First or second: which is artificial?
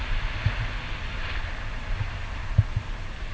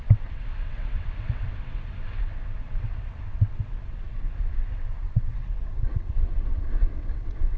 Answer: second